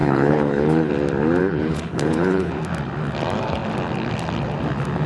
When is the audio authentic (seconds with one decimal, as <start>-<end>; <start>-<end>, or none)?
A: 0.9-1.4; 2.5-5.1